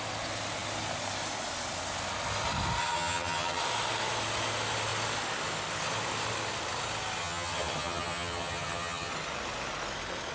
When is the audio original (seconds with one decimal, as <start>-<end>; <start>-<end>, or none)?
0.0-2.8; 3.6-7.2; 9.1-10.3